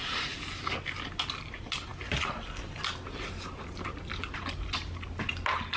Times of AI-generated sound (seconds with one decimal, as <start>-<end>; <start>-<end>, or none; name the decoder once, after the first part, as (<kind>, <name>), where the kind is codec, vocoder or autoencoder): none